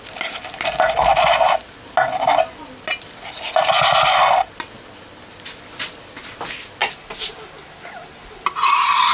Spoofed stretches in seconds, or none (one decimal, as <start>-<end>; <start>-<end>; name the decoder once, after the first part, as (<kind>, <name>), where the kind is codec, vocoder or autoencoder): none